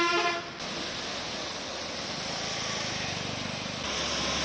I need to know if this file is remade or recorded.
recorded